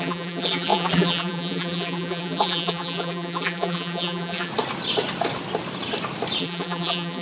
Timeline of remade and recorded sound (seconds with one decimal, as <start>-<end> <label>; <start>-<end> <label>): 0.0-4.5 remade; 4.5-6.4 recorded; 6.4-7.2 remade